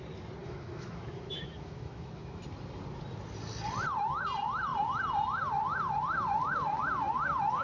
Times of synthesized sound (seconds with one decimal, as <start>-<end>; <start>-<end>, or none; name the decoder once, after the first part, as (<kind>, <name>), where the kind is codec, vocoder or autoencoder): 0.4-2.4 (autoencoder, DAC-VAE)